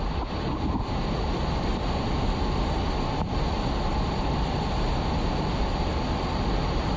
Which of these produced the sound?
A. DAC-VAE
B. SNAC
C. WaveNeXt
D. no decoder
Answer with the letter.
D